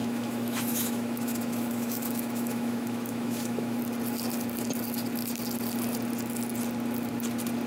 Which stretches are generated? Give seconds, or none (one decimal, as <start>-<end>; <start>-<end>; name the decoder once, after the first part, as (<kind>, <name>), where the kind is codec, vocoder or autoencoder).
0.0-3.8 (autoencoder, DAC-VAE)